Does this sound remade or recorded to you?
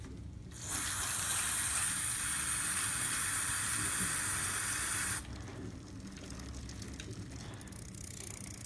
recorded